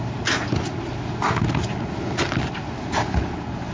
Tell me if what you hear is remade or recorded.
recorded